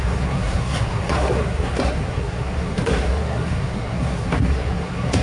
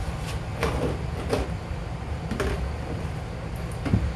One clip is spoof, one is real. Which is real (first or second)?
second